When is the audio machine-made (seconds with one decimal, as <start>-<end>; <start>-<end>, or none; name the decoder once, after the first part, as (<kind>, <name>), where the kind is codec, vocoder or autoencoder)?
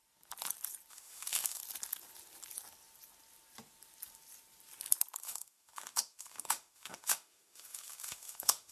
0.9-1.6 (autoencoder, DAC-VAE); 5.2-8.7